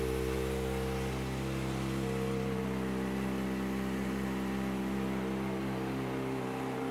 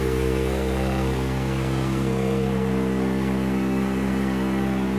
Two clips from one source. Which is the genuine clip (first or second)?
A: first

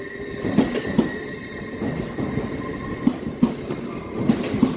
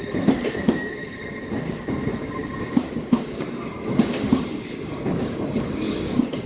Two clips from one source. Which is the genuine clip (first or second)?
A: first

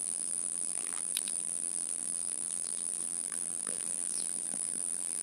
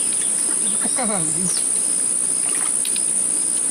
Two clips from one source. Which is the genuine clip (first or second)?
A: second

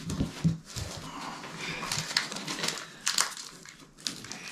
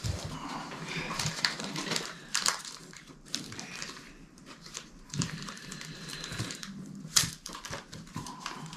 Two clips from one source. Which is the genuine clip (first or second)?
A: first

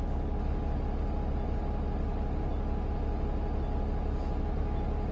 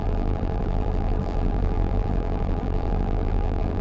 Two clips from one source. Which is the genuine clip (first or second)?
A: first